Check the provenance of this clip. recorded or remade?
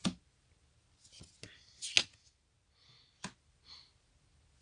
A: recorded